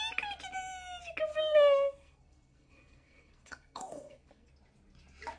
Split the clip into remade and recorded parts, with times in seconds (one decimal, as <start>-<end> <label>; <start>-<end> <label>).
0.0-1.3 recorded; 1.3-4.5 remade; 4.5-5.4 recorded